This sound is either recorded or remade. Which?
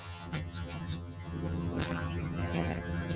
remade